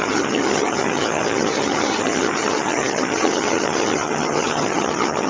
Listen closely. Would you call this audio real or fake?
fake